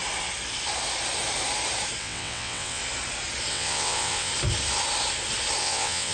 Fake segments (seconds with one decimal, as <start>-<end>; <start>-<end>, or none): 2.0-2.8; 3.5-4.3; 5.6-6.1